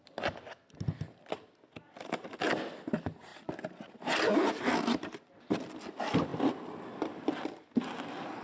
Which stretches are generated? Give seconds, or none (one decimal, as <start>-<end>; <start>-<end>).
none